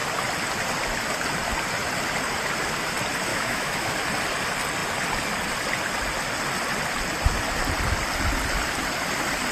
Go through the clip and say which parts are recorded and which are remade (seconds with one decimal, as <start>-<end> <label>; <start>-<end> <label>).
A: 0.0-3.3 recorded; 3.3-3.9 remade; 3.9-9.5 recorded

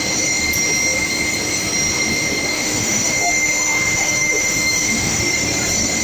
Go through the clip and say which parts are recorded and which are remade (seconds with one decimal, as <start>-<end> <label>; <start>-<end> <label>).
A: 0.0-2.5 recorded; 2.5-5.2 remade; 5.2-6.0 recorded

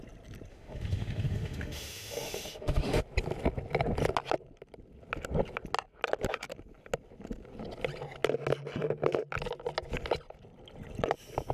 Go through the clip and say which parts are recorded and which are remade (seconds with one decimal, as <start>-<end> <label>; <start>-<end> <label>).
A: 0.0-0.5 recorded; 0.5-3.0 remade; 3.0-11.5 recorded

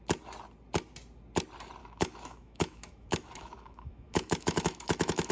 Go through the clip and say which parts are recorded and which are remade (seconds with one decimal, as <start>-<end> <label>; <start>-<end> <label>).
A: 0.0-1.8 recorded; 1.8-5.3 remade

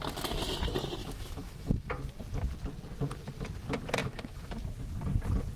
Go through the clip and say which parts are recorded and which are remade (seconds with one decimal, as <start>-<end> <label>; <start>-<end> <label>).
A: 0.0-1.0 recorded; 1.0-1.9 remade; 1.9-4.0 recorded; 4.0-4.5 remade; 4.5-5.6 recorded

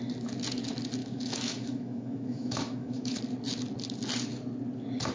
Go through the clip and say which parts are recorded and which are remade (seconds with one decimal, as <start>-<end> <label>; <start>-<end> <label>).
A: 0.0-1.0 recorded; 1.0-3.2 remade; 3.2-5.1 recorded

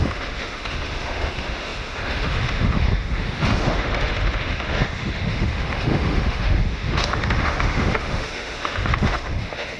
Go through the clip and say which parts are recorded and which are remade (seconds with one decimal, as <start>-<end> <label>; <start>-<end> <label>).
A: 0.0-9.8 remade